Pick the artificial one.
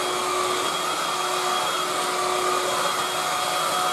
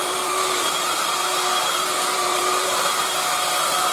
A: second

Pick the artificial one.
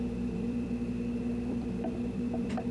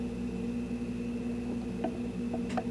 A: first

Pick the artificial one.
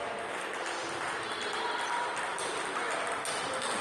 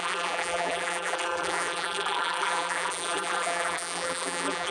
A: second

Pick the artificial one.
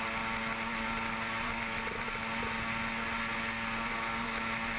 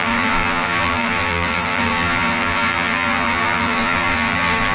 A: second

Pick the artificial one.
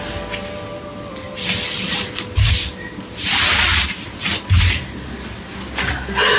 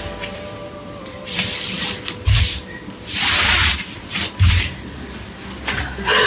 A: second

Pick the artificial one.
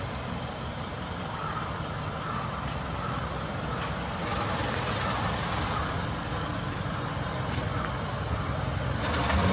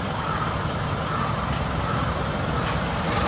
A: second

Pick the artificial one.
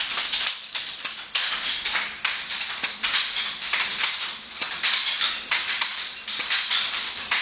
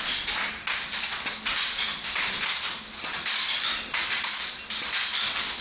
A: first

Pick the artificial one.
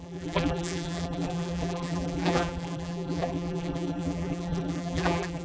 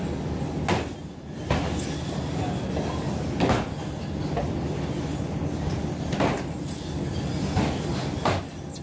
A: first